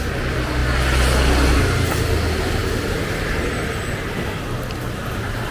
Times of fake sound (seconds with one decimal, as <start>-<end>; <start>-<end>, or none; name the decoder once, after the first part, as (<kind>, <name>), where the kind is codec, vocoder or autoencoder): none